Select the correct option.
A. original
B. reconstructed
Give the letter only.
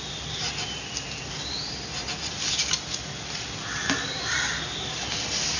A